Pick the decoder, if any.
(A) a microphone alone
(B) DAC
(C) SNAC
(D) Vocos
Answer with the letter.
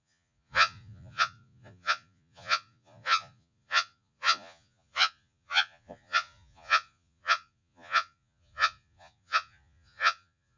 D